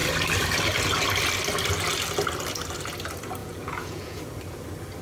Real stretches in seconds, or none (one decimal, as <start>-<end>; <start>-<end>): 0.0-3.4; 4.2-5.0